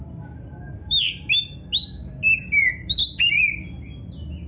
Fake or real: real